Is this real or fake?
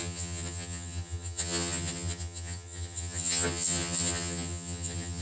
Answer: fake